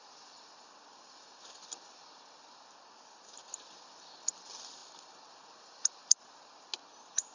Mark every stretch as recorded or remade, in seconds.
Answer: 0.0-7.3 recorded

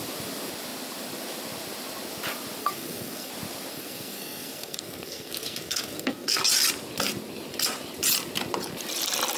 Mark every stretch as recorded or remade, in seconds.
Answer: 0.0-2.6 recorded; 2.6-3.3 remade; 3.3-3.7 recorded; 3.7-6.4 remade; 6.4-9.4 recorded

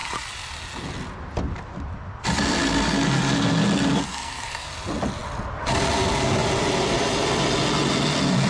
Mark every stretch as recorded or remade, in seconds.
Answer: 0.0-4.1 recorded; 4.1-4.7 remade; 4.7-8.5 recorded

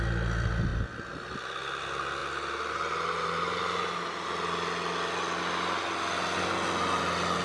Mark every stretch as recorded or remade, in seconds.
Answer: 0.0-7.4 recorded

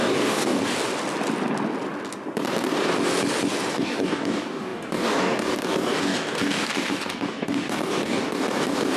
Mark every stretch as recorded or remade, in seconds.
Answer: 0.0-0.6 remade; 0.6-3.7 recorded; 3.7-9.0 remade